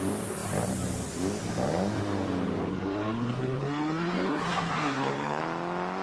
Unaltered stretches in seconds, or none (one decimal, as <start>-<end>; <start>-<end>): 0.0-2.7; 5.4-6.0